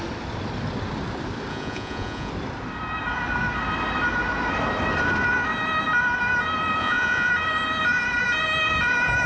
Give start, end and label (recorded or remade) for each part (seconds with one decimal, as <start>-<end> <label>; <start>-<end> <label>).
0.0-1.5 recorded; 1.5-2.3 remade; 2.3-6.8 recorded; 6.8-7.3 remade; 7.3-9.3 recorded